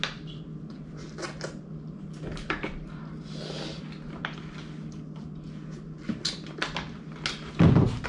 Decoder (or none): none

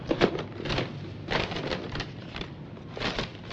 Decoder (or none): none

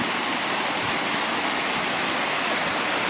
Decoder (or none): none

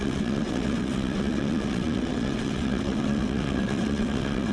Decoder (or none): vocoder, WaveNeXt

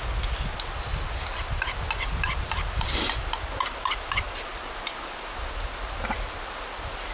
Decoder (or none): none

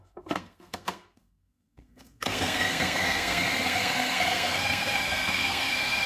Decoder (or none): codec, SNAC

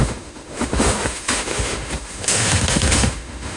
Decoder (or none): autoencoder, DAC-VAE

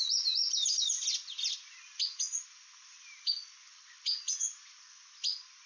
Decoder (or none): none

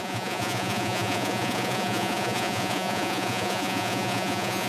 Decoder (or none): vocoder, Vocos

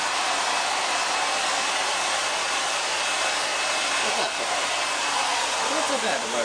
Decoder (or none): none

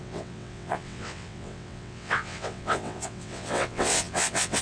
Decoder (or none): vocoder, WaveNeXt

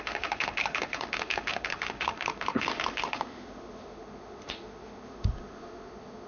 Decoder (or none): autoencoder, DAC-VAE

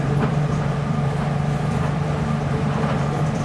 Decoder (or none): vocoder, BigVGAN v2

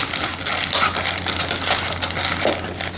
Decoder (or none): none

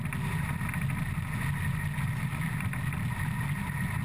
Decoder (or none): none